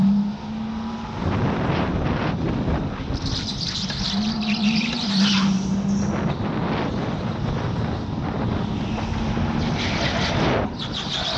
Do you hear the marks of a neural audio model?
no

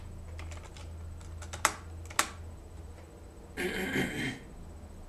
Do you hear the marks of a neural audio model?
no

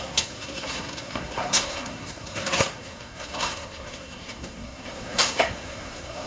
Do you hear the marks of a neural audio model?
yes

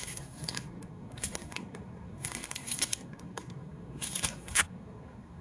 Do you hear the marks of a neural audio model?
yes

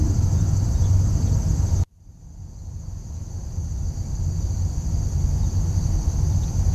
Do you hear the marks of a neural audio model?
no